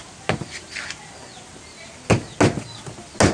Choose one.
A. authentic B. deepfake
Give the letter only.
A